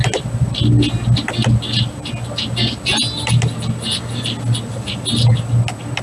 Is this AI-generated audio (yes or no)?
no